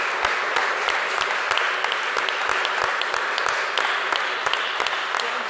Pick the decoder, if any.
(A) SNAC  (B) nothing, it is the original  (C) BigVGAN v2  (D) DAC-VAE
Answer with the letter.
B